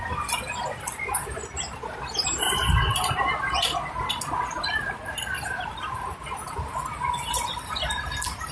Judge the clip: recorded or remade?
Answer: recorded